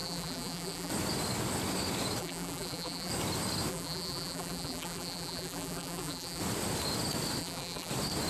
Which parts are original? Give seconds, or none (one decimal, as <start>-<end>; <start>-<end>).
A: 0.9-2.2; 3.1-3.7; 6.4-7.4; 7.9-8.3